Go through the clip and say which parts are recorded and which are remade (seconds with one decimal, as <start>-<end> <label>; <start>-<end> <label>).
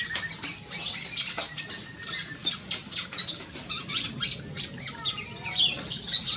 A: 0.0-6.4 recorded